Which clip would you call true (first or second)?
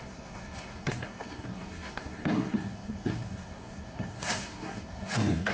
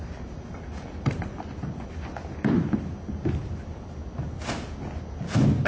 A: second